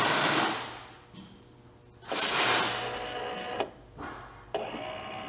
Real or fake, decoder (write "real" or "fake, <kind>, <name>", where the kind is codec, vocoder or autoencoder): real